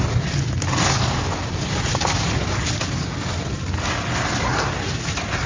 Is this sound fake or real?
real